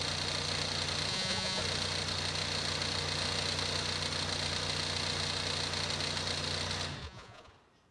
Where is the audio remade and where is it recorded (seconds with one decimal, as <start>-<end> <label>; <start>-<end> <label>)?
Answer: 0.0-1.1 recorded; 1.1-1.6 remade; 1.6-7.0 recorded; 7.0-7.5 remade; 7.5-7.9 recorded

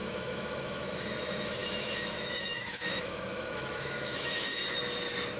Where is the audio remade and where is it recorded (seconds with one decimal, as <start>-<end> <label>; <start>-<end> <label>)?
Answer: 0.0-4.5 remade; 4.5-5.4 recorded

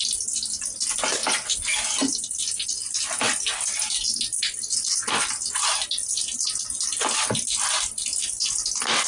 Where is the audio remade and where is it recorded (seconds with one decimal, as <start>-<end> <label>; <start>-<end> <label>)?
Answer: 0.0-9.1 recorded